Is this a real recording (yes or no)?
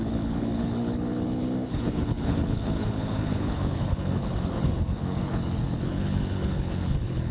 no